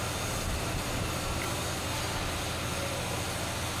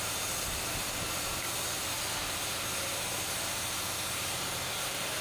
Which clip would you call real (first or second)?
first